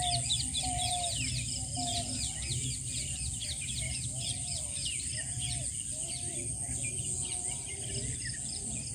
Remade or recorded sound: recorded